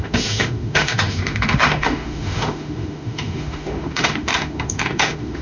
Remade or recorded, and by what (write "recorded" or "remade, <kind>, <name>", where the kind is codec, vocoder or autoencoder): remade, autoencoder, DAC-VAE